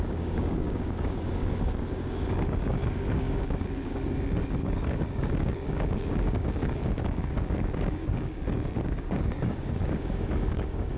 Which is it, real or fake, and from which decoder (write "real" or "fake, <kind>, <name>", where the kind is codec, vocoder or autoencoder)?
fake, codec, DAC